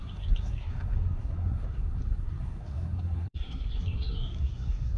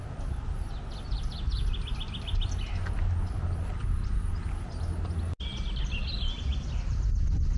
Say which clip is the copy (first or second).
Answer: first